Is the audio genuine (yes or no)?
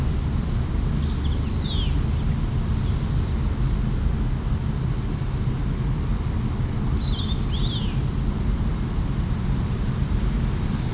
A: yes